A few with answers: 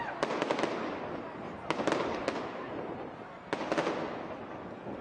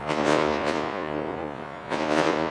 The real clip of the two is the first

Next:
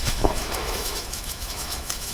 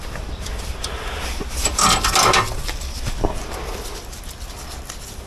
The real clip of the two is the second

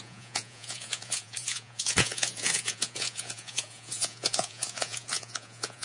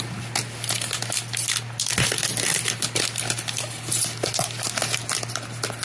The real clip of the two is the second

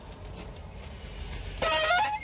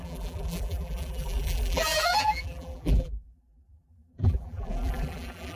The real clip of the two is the first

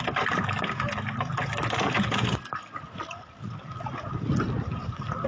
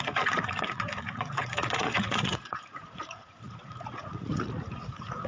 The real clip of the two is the first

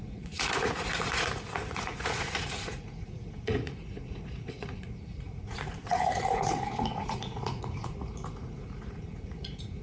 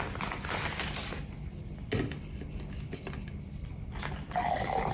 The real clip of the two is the second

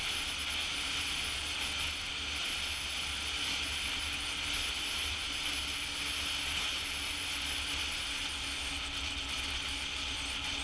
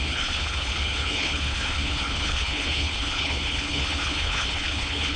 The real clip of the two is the first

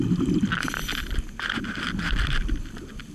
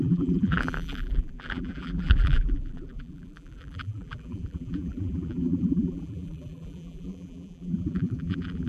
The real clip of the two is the first